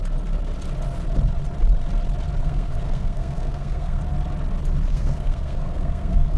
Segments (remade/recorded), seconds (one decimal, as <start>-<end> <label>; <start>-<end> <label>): 0.0-2.4 recorded; 2.4-4.0 remade; 4.0-4.9 recorded; 4.9-6.4 remade